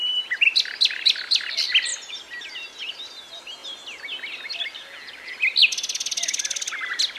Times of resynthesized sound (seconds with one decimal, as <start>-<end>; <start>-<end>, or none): none